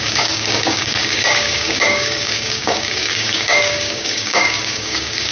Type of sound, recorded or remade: remade